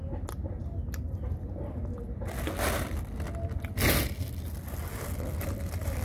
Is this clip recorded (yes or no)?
yes